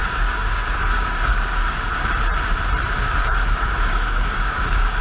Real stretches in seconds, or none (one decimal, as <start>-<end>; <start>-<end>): 2.1-3.2